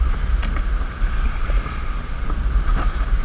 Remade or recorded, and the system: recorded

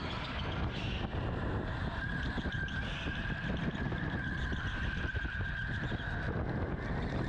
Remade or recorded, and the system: recorded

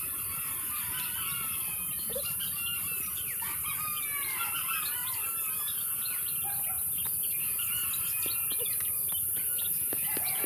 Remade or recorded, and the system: recorded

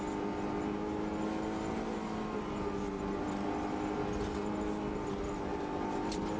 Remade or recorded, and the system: recorded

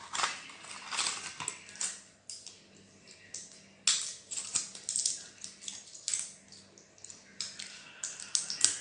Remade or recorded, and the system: recorded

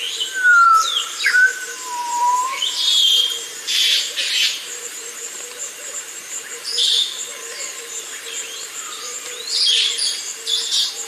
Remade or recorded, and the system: remade, vocoder, BigVGAN v2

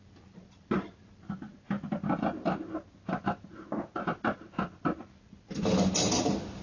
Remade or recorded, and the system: recorded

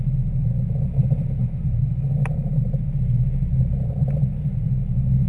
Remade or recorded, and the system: recorded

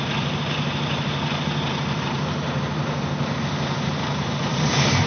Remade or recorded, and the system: remade, vocoder, BigVGAN v2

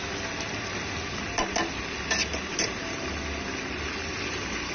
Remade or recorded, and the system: recorded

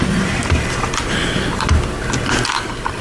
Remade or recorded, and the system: remade, vocoder, BigVGAN v2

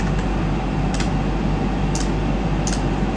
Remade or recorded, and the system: recorded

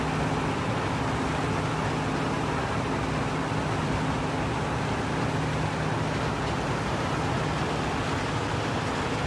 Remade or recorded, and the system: recorded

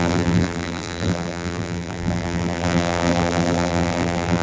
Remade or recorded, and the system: remade, vocoder, BigVGAN v2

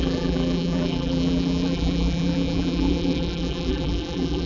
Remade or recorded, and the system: remade, vocoder, BigVGAN v2